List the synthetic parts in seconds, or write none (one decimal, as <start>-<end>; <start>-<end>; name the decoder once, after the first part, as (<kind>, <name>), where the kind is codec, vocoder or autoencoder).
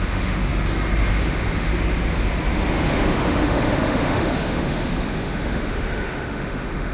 0.0-0.5 (autoencoder, DAC-VAE); 1.1-1.7; 2.7-6.9